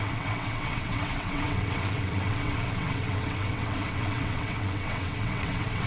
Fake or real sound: fake